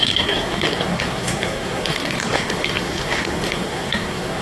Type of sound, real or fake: fake